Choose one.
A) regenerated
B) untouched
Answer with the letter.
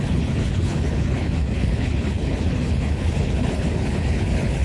A